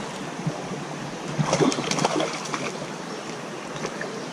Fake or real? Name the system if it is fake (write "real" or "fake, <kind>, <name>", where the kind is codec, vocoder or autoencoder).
real